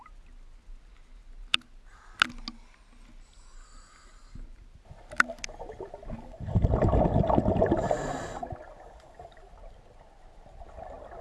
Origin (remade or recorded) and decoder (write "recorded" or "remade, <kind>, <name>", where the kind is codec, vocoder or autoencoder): recorded